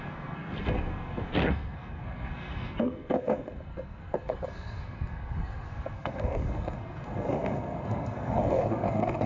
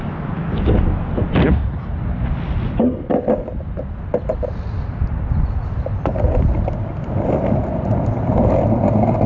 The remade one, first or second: first